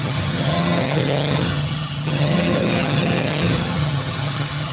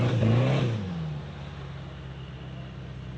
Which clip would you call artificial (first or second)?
first